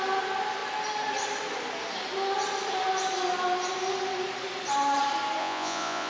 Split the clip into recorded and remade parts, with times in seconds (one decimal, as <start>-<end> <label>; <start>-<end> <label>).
0.0-5.4 recorded; 5.4-6.1 remade